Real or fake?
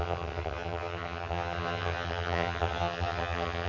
fake